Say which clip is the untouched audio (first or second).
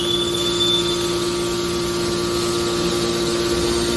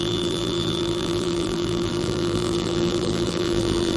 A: first